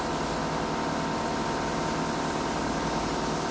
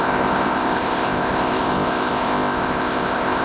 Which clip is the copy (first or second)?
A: second